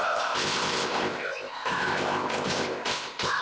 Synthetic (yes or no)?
yes